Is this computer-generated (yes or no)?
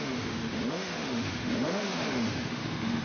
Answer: yes